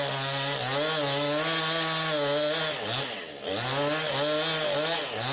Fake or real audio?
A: real